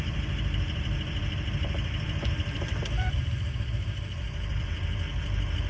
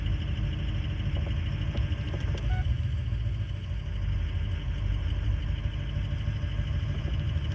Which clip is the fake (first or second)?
first